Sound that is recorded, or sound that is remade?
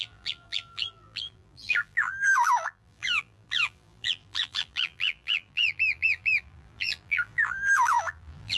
remade